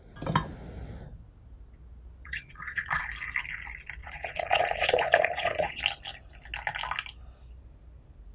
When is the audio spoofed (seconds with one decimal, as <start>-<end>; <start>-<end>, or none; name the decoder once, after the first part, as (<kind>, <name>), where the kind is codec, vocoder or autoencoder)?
2.2-3.0 (vocoder, Vocos); 4.0-5.8